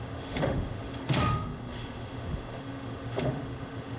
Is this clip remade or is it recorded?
remade